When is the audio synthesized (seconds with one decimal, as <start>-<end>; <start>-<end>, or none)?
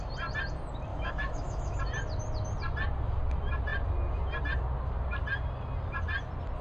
0.9-1.8